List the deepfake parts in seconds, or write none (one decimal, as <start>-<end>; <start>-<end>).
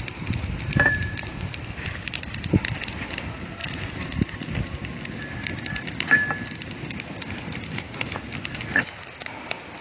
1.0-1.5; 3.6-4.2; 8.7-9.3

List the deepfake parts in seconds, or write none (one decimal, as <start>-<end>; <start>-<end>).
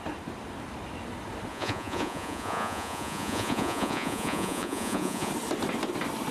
1.5-5.3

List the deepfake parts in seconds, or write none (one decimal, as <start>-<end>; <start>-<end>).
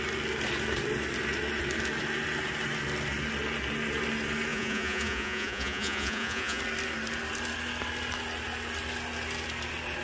4.5-6.6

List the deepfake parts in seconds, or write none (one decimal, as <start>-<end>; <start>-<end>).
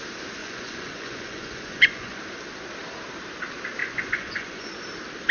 0.4-2.2; 3.8-4.7